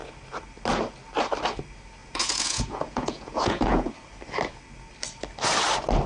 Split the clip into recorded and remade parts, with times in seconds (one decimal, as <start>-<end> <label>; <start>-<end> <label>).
0.0-2.0 recorded; 2.0-3.9 remade; 3.9-6.1 recorded